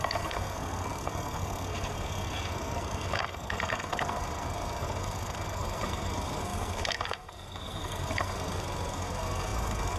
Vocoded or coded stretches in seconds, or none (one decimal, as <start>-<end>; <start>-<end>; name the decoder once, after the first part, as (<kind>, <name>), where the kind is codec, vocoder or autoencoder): 0.0-10.0 (codec, SNAC)